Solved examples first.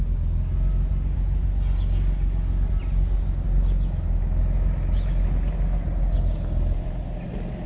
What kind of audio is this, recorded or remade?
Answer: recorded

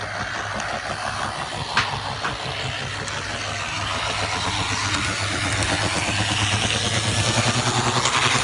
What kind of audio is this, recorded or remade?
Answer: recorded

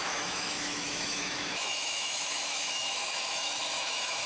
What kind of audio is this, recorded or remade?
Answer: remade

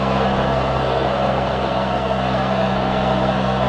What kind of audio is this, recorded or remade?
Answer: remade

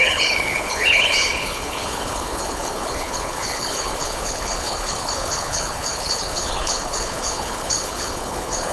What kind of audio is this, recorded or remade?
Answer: remade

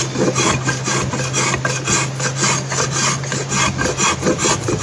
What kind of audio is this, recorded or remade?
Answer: recorded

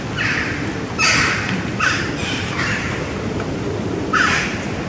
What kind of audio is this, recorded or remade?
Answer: recorded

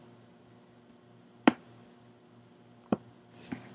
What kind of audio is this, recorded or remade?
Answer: recorded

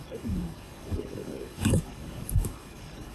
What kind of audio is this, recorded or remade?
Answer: remade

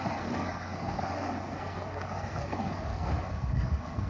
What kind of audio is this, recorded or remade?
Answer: remade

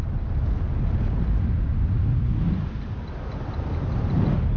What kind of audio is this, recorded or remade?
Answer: recorded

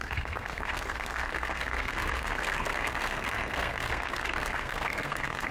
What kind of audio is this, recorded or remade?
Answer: remade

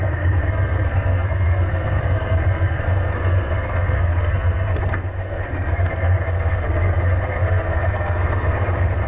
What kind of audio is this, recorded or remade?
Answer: remade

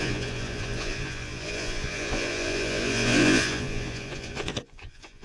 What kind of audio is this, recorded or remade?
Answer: remade